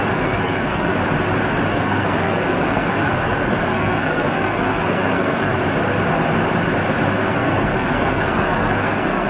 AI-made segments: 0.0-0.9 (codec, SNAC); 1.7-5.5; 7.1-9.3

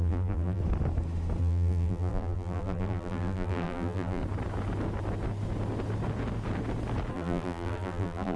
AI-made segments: 0.0-0.6 (vocoder, BigVGAN v2); 1.4-4.2; 7.1-8.4